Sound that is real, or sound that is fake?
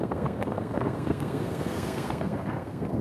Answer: fake